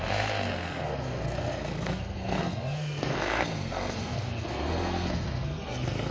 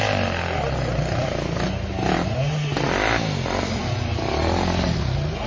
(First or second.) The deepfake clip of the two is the first